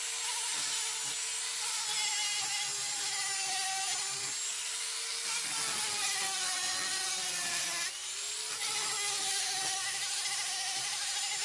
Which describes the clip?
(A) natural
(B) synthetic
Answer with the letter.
A